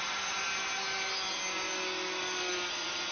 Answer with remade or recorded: recorded